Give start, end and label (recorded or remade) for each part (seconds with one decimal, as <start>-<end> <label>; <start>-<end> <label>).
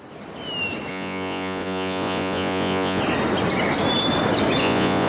0.0-0.9 recorded; 0.9-3.0 remade; 3.0-4.6 recorded; 4.6-5.1 remade